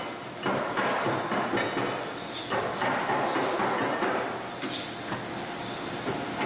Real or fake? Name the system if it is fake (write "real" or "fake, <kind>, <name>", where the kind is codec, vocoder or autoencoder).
real